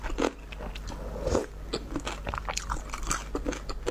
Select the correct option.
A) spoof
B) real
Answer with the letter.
B